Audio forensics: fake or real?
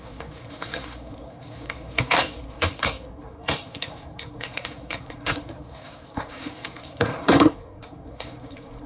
fake